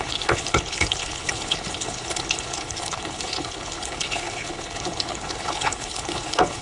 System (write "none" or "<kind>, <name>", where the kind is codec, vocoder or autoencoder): codec, HILCodec